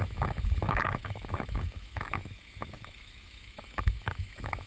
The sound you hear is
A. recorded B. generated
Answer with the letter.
B